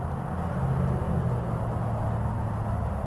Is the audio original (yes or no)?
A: yes